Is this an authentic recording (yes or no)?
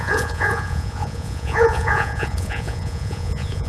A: no